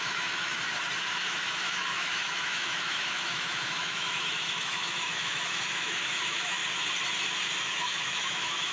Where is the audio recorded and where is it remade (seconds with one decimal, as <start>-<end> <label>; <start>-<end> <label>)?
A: 0.0-0.5 remade; 0.5-1.1 recorded; 1.1-6.6 remade; 6.6-7.6 recorded; 7.6-8.7 remade

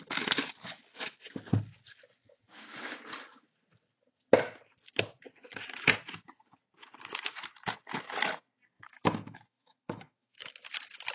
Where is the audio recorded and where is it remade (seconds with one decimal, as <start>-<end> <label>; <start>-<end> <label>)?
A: 0.0-8.7 recorded; 8.7-10.5 remade; 10.5-11.1 recorded

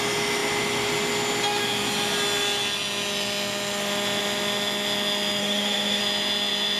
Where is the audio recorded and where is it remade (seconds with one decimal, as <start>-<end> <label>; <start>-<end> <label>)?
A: 0.0-5.4 recorded; 5.4-6.0 remade; 6.0-6.8 recorded

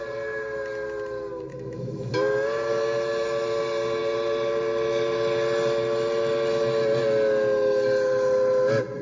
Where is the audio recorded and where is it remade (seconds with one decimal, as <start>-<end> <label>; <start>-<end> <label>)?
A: 0.0-1.5 recorded; 1.5-2.1 remade; 2.1-9.0 recorded

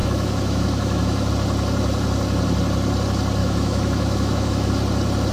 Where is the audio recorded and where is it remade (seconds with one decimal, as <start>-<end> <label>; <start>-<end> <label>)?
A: 0.0-1.3 remade; 1.3-3.4 recorded; 3.4-4.7 remade; 4.7-5.3 recorded

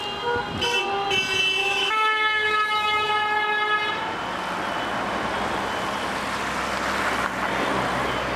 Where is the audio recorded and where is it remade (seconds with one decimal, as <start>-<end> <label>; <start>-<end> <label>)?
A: 0.0-1.6 recorded; 1.6-3.1 remade; 3.1-8.4 recorded